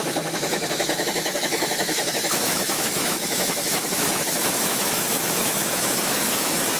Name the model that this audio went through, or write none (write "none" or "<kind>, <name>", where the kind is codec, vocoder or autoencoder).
autoencoder, DAC-VAE